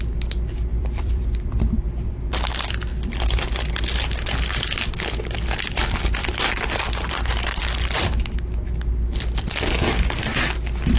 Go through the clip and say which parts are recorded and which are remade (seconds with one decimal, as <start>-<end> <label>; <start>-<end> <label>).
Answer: 0.0-0.7 recorded; 0.7-2.1 remade; 2.1-11.0 recorded

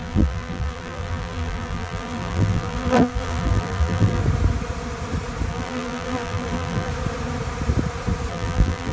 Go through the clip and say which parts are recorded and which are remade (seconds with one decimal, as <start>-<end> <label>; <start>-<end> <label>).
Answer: 0.0-4.2 remade; 4.2-5.5 recorded; 5.5-6.9 remade; 6.9-8.3 recorded; 8.3-8.9 remade